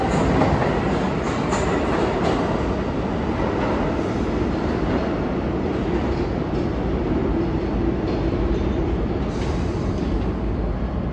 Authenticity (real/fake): real